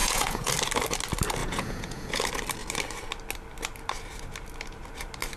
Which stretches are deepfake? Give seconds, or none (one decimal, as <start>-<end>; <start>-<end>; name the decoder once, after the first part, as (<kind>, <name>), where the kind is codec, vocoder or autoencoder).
0.0-0.5 (vocoder, Vocos); 1.4-2.2